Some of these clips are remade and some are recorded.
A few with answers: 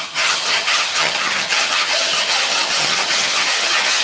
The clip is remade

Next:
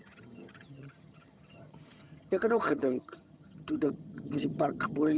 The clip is remade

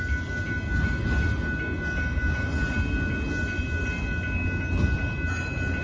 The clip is recorded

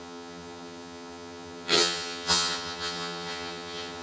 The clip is remade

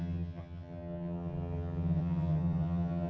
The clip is remade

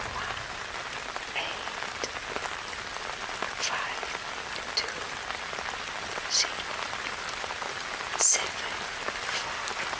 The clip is recorded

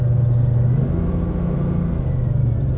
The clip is recorded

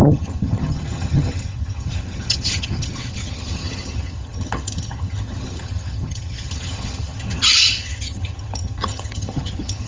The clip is remade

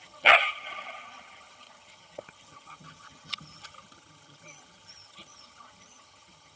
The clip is remade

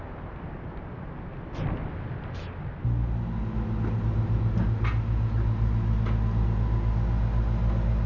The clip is recorded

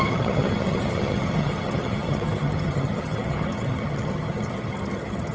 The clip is remade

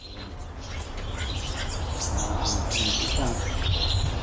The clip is recorded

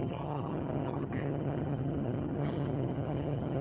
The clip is remade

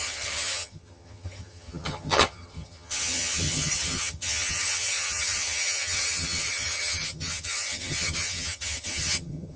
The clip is remade